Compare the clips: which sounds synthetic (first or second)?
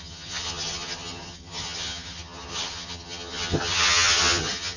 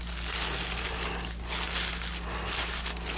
first